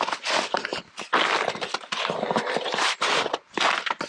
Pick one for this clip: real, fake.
real